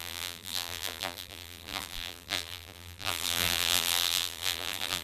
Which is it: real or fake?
fake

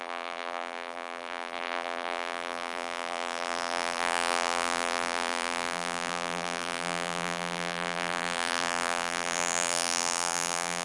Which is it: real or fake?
fake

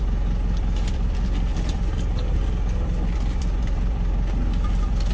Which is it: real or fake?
fake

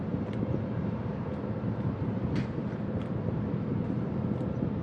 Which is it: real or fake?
fake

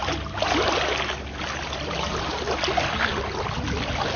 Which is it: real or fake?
real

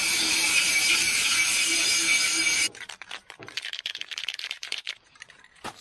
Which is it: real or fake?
fake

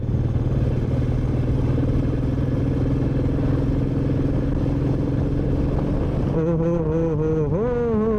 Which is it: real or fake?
real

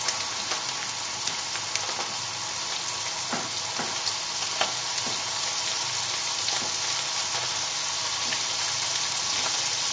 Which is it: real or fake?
real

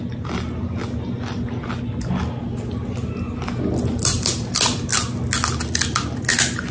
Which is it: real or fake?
real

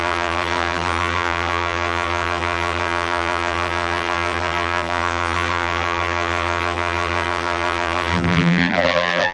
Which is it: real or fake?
fake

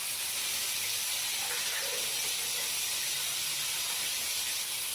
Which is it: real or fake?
real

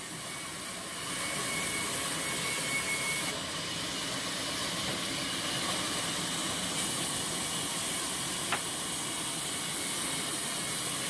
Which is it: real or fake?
real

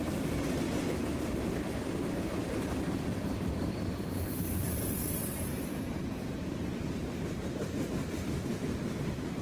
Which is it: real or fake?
fake